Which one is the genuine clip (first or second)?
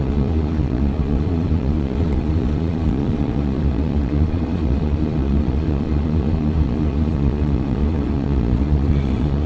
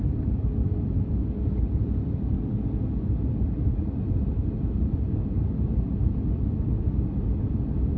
second